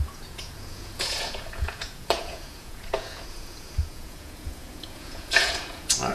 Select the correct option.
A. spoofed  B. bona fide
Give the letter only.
A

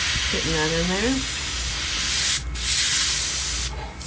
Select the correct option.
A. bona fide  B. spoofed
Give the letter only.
A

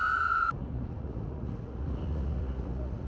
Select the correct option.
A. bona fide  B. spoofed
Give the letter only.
B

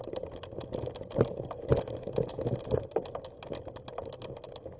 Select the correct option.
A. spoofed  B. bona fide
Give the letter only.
B